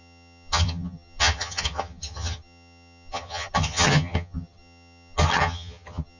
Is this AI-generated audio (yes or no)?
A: yes